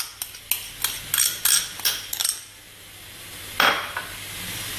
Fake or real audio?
real